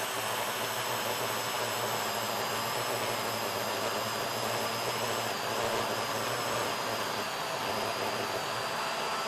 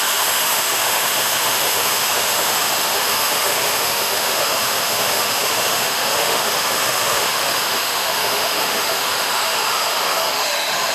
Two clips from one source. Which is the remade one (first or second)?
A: second